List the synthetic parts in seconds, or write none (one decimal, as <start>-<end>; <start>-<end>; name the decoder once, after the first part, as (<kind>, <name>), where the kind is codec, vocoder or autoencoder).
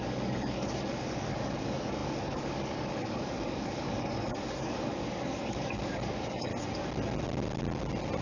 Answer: 0.0-6.5 (codec, DAC)